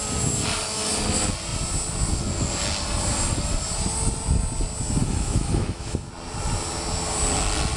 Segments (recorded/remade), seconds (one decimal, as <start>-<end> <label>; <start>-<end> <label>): 0.0-5.0 recorded; 5.0-6.1 remade; 6.1-7.8 recorded